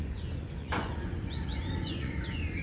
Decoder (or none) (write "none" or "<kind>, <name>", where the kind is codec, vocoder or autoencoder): vocoder, Vocos